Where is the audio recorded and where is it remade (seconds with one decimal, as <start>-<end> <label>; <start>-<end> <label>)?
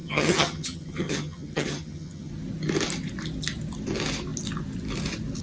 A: 0.0-2.3 remade; 2.3-5.4 recorded